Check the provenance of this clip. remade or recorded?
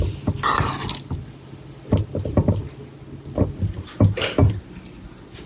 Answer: recorded